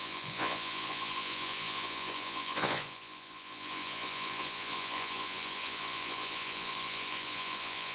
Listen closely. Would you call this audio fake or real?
fake